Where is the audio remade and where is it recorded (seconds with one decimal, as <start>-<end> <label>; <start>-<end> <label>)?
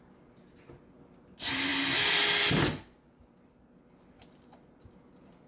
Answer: 0.0-5.5 recorded